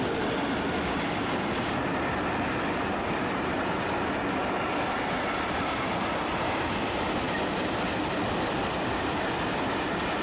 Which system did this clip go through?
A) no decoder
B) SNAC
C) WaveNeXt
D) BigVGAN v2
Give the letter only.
A